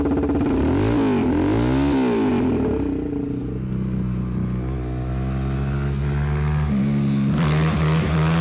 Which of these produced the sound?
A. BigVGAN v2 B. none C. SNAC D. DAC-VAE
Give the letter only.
B